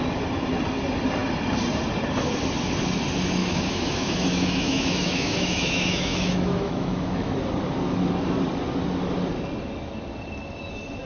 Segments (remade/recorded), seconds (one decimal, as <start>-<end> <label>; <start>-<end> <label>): 0.0-3.4 recorded; 3.4-7.3 remade; 7.3-11.1 recorded